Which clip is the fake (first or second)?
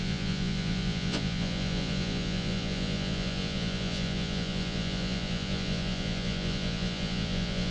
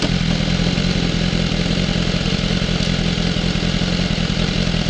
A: first